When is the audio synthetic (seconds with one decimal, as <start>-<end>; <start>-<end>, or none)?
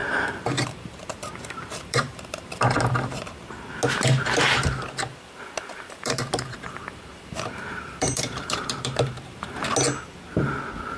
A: 0.0-3.3; 5.7-9.7